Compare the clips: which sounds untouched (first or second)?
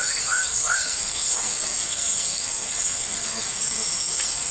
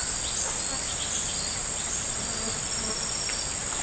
second